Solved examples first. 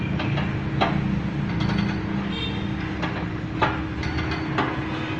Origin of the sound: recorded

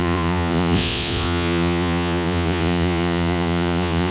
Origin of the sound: remade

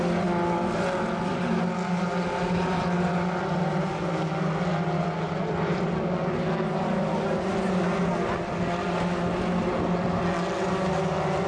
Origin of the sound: recorded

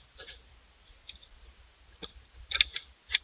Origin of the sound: recorded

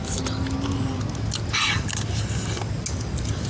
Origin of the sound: recorded